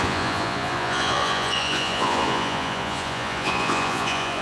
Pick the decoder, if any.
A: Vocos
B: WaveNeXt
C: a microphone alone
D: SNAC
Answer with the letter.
A